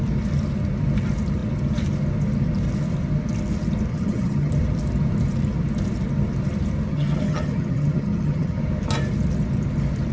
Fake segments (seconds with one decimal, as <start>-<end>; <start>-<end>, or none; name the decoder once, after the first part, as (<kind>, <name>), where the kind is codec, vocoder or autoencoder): 3.9-4.5 (vocoder, HiFi-GAN); 6.9-8.6